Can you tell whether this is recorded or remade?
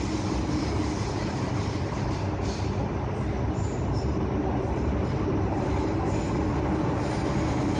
recorded